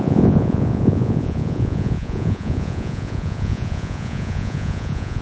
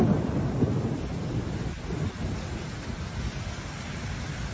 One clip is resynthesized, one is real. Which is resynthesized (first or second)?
first